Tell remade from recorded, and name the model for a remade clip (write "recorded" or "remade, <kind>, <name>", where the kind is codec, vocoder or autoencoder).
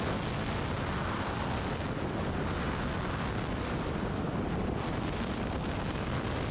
recorded